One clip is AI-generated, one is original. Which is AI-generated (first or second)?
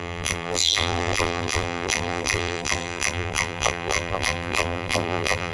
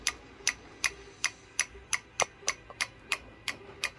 first